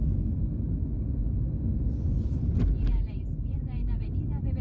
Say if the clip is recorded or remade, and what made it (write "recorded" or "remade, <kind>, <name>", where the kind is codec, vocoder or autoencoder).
recorded